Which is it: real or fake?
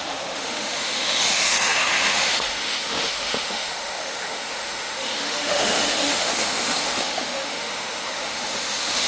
fake